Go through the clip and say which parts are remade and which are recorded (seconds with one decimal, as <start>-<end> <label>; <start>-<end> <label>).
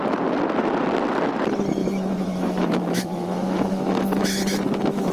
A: 0.0-1.8 recorded; 1.8-5.1 remade